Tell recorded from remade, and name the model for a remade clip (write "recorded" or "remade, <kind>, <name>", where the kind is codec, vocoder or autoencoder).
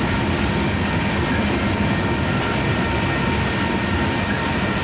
recorded